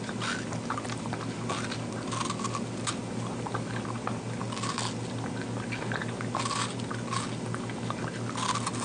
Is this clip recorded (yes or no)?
yes